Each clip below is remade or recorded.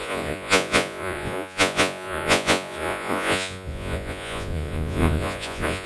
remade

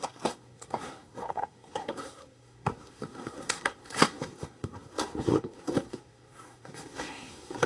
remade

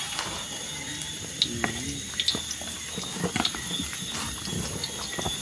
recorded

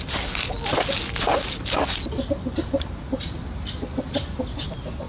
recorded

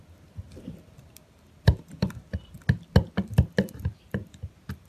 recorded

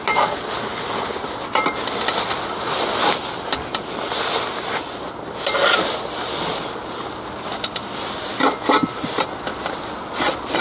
recorded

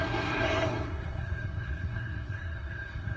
remade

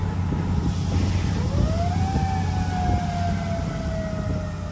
recorded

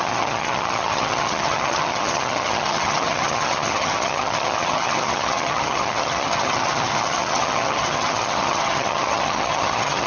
remade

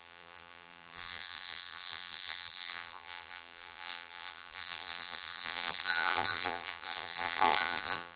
remade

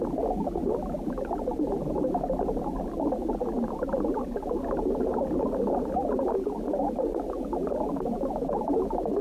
recorded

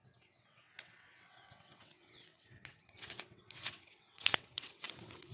remade